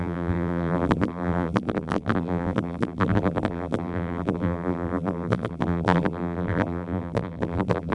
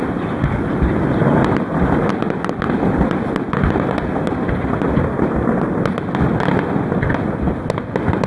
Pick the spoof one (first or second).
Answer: first